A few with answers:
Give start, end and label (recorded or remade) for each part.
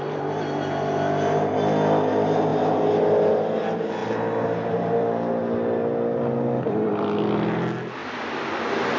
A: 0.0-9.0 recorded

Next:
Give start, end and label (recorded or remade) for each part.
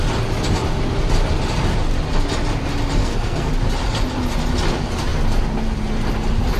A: 0.0-3.0 recorded; 3.0-3.5 remade; 3.5-6.6 recorded